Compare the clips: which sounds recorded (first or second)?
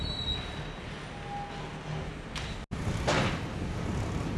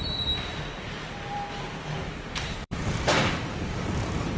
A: first